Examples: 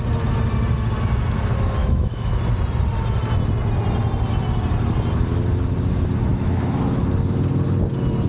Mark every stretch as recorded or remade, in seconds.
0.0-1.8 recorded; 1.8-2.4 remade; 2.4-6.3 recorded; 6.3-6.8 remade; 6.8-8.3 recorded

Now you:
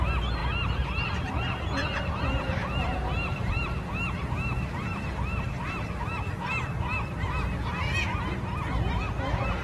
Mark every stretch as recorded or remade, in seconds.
0.0-9.6 recorded